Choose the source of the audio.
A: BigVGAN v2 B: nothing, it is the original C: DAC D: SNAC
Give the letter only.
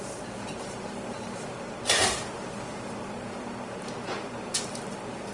A